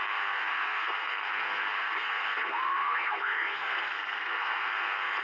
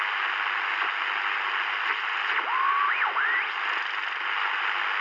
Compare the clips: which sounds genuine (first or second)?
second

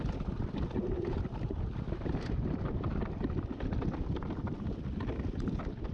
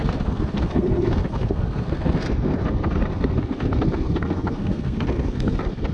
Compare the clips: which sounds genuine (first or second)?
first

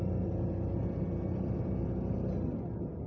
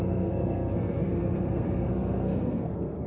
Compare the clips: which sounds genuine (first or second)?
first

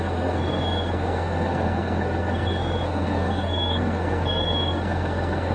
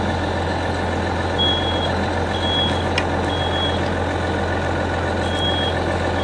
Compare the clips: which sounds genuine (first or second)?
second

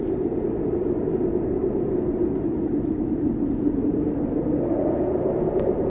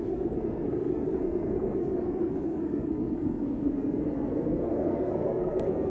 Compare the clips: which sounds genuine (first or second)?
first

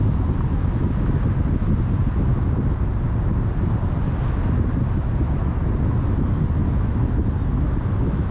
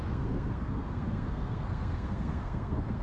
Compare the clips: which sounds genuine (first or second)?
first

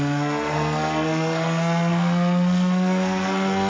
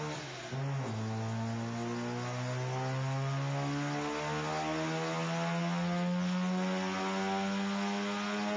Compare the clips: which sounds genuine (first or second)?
second